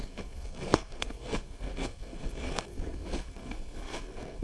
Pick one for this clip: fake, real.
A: fake